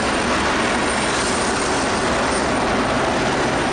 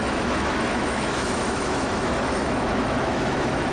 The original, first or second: first